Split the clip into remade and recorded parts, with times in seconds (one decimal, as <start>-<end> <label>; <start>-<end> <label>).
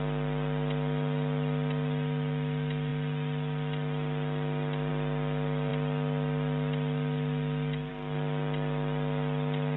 0.0-9.8 recorded